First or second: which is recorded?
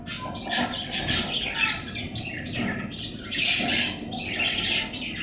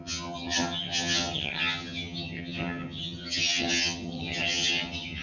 first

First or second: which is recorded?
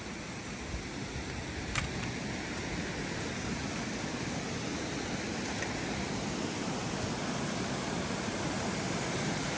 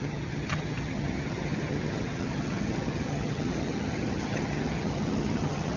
first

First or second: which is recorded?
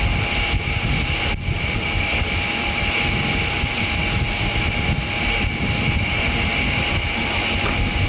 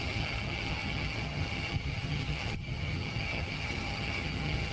first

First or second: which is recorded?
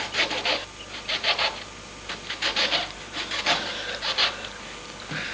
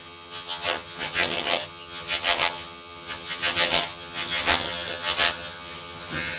first